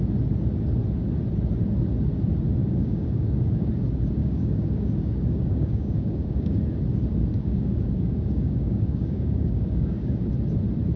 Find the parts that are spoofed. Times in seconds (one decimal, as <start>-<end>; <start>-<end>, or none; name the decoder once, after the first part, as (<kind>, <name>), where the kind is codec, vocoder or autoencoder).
2.6-3.7 (codec, DAC); 4.2-6.6; 7.3-10.3